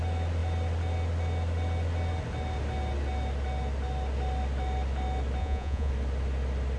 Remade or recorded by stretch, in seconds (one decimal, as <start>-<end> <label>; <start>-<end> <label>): 0.0-5.4 recorded; 5.4-5.9 remade; 5.9-6.8 recorded